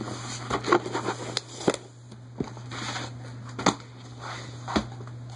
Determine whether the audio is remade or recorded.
recorded